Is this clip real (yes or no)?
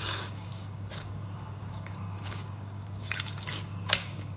no